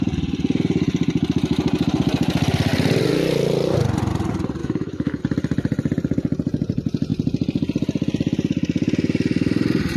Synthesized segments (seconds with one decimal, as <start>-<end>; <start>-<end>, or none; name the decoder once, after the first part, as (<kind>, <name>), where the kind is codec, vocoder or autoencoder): 4.6-5.2 (autoencoder, DAC-VAE)